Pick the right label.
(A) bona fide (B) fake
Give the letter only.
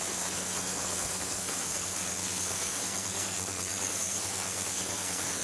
B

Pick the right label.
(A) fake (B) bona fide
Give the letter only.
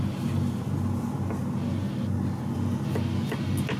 B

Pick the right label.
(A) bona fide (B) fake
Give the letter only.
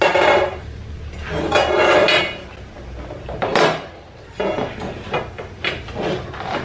A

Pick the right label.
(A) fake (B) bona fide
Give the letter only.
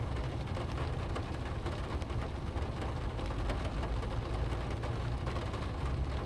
B